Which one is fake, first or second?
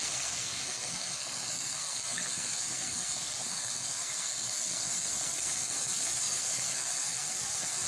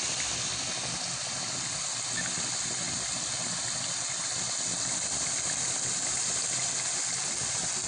first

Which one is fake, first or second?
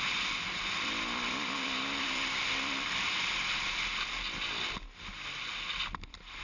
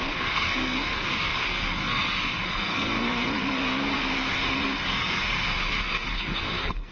second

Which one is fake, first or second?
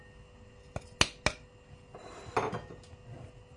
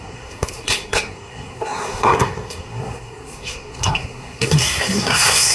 second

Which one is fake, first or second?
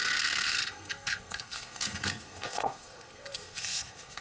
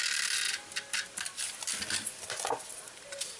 first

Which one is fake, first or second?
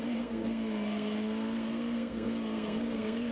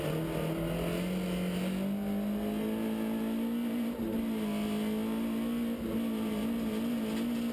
first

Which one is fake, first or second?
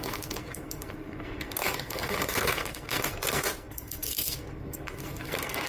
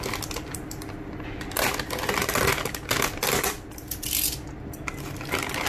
first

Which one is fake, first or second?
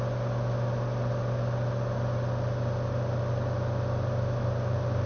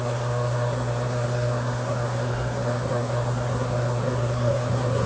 second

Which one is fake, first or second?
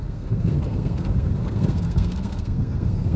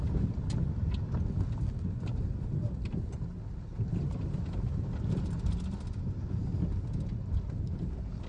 first